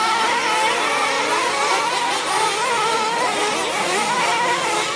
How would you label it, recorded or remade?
recorded